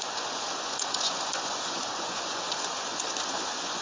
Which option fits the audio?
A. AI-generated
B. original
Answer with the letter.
A